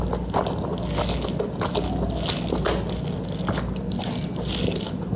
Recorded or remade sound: recorded